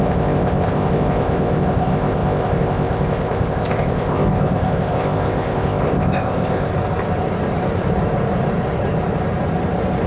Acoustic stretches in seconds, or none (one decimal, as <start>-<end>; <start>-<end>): 6.7-10.1